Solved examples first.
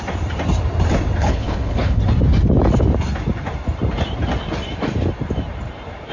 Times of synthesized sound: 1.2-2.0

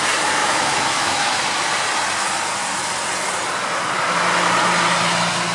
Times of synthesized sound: 0.4-1.4